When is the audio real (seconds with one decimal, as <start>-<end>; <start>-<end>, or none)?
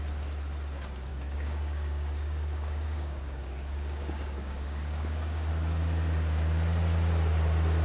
0.0-1.1; 5.5-7.8